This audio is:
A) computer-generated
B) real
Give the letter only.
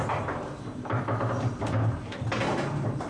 B